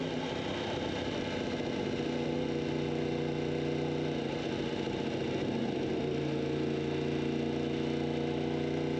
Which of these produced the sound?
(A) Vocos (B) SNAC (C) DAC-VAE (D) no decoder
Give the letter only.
D